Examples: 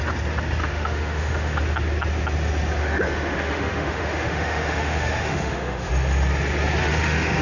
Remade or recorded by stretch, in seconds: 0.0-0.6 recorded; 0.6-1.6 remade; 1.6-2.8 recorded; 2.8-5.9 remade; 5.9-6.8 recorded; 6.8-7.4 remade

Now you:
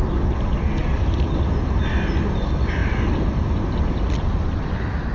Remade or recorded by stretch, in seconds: 0.0-0.8 recorded; 0.8-1.5 remade; 1.5-2.8 recorded; 2.8-5.1 remade